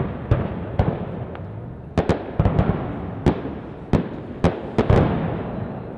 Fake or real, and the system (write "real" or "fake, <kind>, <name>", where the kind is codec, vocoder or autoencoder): real